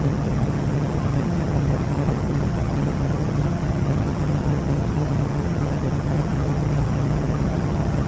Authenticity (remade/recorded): remade